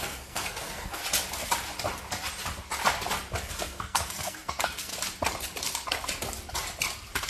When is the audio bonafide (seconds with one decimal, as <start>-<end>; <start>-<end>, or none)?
1.0-3.4; 4.9-7.3